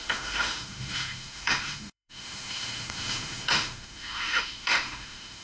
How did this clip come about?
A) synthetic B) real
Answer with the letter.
A